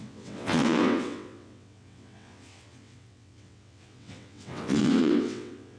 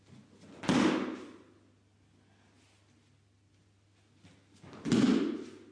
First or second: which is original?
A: second